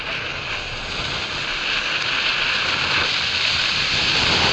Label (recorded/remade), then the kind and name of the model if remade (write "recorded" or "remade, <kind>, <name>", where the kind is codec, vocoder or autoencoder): recorded